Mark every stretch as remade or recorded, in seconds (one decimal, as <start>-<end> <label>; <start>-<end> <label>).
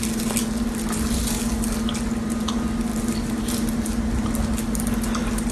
0.0-5.5 recorded